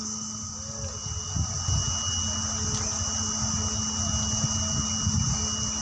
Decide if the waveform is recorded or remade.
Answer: recorded